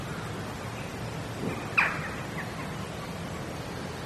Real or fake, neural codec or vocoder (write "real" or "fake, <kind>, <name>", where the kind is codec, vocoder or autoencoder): real